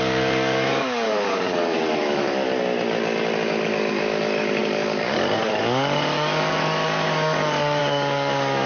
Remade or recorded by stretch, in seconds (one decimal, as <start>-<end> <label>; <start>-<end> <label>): 0.0-2.5 remade; 2.5-3.5 recorded; 3.5-8.7 remade